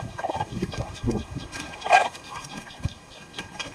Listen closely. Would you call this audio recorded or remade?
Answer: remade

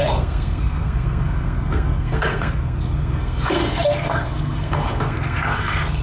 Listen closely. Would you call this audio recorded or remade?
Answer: remade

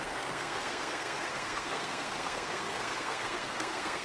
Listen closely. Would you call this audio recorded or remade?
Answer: remade